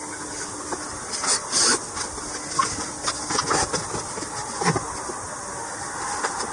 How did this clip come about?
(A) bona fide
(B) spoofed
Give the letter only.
A